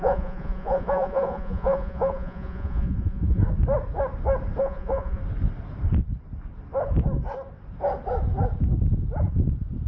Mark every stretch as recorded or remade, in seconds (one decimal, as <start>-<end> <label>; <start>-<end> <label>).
0.0-3.4 remade; 3.4-4.6 recorded; 4.6-5.2 remade; 5.2-9.9 recorded